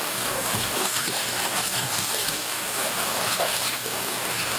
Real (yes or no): no